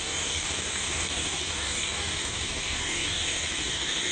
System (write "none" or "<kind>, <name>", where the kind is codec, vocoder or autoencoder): codec, DAC